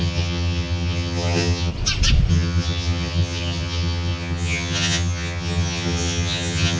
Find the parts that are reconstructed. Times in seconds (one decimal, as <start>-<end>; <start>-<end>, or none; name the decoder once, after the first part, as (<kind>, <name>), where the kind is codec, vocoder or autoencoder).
0.0-1.7 (vocoder, HiFi-GAN); 2.3-6.8